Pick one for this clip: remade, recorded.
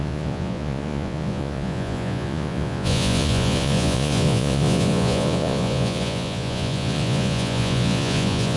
remade